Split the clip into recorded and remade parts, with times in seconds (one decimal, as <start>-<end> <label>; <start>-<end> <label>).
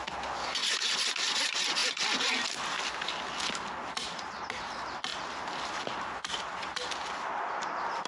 0.0-8.1 recorded